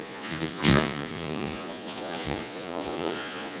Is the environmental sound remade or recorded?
remade